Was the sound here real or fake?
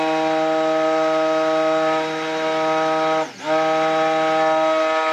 real